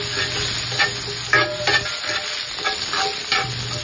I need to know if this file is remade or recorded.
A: recorded